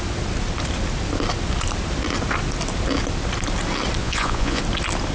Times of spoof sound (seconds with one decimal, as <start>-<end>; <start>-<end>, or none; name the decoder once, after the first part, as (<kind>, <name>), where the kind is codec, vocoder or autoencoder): 4.0-4.6 (vocoder, Vocos)